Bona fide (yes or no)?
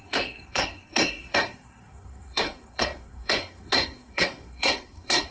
no